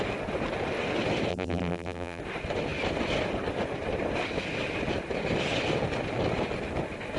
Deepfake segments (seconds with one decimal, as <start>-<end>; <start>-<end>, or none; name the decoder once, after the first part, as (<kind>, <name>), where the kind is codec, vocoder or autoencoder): 1.3-2.2 (vocoder, BigVGAN v2)